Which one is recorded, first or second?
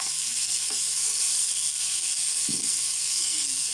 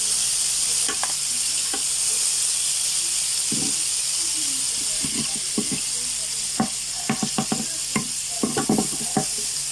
second